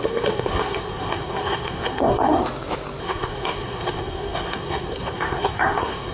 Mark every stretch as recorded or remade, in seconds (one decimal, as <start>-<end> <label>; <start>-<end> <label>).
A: 0.0-2.4 remade; 2.4-3.0 recorded; 3.0-6.1 remade